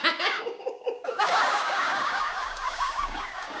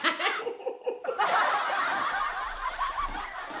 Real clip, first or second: second